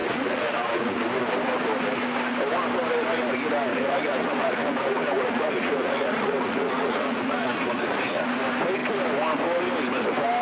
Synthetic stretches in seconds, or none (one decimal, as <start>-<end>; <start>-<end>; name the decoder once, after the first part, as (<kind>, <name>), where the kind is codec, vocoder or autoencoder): 0.0-1.0 (vocoder, Vocos); 3.7-8.2